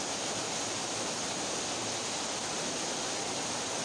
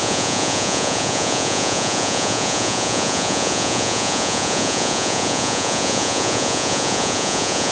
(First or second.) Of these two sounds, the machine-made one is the second